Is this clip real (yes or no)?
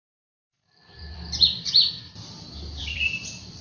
no